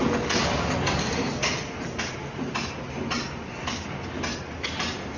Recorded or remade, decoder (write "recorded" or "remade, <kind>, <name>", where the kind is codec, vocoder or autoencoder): recorded